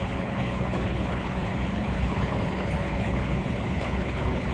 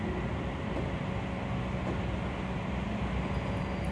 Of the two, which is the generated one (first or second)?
first